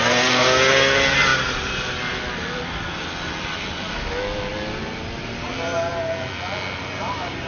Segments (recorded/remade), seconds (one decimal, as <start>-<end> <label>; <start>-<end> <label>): 0.0-7.5 recorded